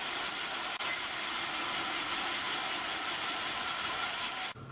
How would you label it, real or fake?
real